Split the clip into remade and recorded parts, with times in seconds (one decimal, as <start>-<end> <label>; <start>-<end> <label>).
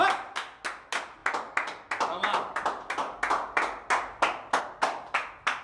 0.0-5.6 recorded